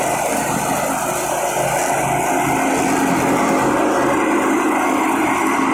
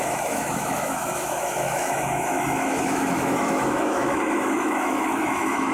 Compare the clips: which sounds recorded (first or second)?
first